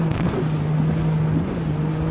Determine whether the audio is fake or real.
real